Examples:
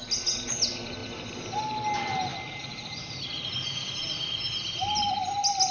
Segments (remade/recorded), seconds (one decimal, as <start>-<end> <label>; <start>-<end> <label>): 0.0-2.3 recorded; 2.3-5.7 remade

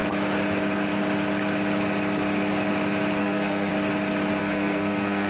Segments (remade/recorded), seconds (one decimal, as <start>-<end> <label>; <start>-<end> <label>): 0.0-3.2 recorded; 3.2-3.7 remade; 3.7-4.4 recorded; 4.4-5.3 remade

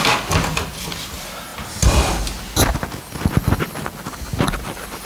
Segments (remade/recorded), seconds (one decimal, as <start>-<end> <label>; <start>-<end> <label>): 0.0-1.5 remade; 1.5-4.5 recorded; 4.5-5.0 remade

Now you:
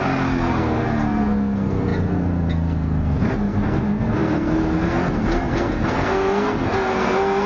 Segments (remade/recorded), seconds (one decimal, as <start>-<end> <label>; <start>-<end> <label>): 0.0-7.5 remade